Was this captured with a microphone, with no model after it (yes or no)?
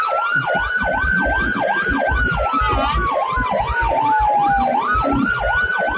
yes